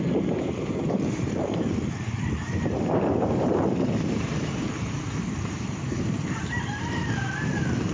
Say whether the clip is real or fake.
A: fake